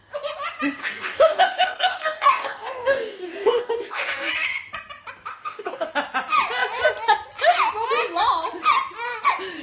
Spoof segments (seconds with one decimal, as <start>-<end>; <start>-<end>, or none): 0.8-4.3; 5.3-5.9